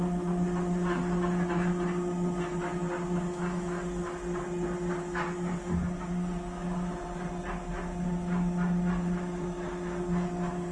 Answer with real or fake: real